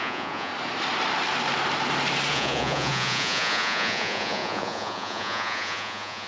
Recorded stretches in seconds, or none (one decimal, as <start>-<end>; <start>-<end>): 0.5-2.3